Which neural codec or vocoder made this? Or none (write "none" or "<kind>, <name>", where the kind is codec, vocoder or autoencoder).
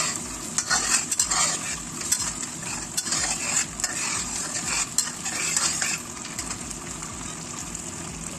none